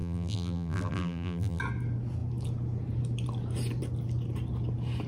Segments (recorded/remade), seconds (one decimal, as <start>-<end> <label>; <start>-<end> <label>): 0.0-1.6 remade; 1.6-5.1 recorded